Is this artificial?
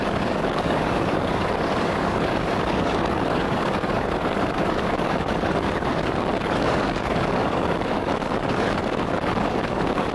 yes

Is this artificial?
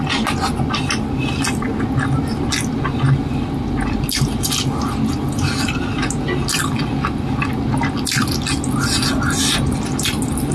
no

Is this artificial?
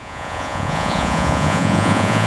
yes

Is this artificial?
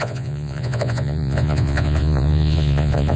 yes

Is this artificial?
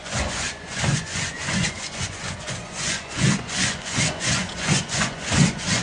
yes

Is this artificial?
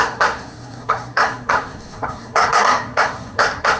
yes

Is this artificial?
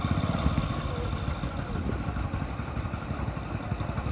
no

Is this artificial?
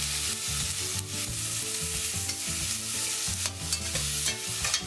no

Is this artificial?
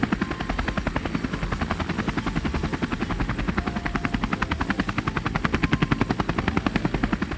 no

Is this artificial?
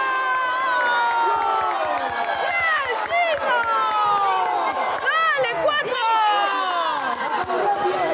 no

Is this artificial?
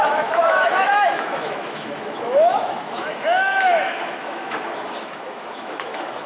yes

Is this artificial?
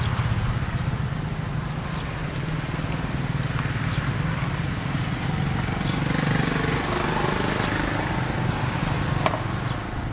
no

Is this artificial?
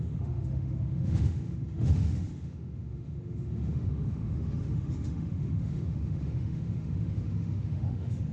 yes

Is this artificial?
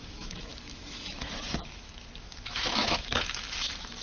yes